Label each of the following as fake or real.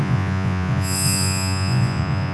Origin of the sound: fake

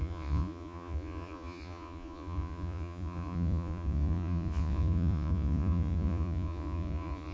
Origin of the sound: fake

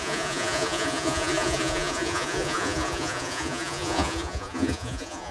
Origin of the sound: fake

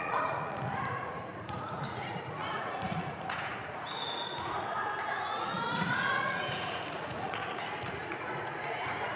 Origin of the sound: fake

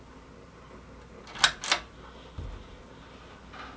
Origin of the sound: real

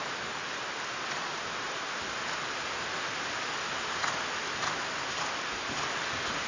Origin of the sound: real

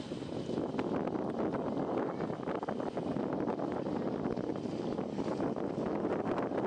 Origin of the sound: real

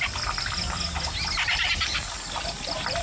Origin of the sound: real